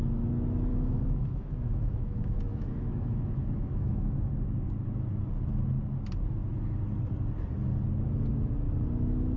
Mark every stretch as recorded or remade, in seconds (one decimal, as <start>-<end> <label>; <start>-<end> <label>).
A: 0.0-0.7 recorded; 0.7-4.3 remade; 4.3-9.4 recorded